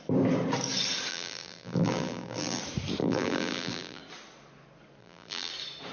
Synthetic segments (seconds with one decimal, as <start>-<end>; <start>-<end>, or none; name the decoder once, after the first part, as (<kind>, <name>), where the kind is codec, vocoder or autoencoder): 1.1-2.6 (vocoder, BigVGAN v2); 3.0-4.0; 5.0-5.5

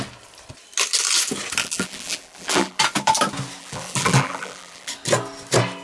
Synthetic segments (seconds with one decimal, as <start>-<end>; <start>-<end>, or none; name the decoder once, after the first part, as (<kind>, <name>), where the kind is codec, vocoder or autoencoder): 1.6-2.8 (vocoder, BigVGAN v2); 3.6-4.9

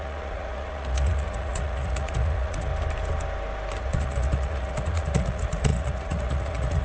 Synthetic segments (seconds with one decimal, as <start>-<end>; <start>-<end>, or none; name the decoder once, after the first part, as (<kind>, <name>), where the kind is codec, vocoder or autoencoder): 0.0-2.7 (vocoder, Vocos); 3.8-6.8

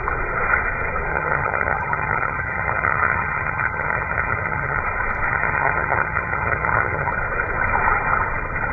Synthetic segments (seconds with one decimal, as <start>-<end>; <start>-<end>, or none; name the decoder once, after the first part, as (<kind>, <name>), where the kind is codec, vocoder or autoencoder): 1.1-4.8 (vocoder, HiFi-GAN); 5.3-7.1

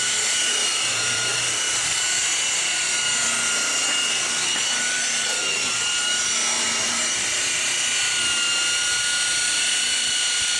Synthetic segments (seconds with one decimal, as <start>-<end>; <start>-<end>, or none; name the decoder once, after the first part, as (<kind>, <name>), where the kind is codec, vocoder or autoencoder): 0.0-2.3 (vocoder, BigVGAN v2); 6.6-7.7; 9.5-10.6

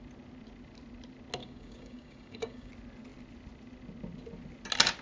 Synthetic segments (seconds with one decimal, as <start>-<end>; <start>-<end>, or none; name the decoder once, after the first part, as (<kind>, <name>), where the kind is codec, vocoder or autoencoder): 1.4-2.7 (codec, DAC)